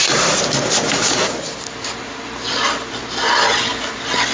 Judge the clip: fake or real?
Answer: real